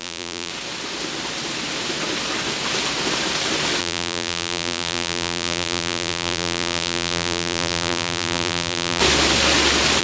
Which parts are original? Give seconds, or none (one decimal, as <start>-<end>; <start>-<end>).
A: 0.5-3.8; 9.0-10.0

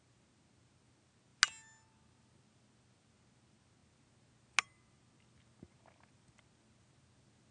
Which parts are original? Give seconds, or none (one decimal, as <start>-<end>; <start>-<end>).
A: 0.0-7.5